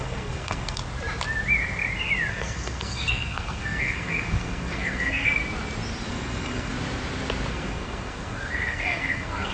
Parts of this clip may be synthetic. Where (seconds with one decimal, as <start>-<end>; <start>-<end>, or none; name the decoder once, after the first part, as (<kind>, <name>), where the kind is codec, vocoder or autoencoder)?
0.0-0.8 (codec, SNAC); 2.3-5.4; 6.1-6.7; 7.5-9.5